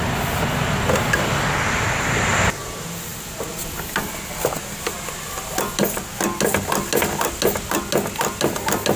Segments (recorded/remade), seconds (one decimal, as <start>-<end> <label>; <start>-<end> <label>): 0.0-9.0 recorded